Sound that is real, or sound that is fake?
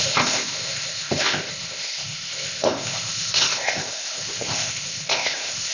fake